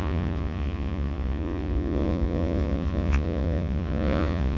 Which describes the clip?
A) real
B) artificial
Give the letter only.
B